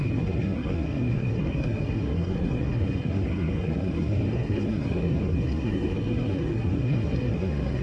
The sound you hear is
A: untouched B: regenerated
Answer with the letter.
B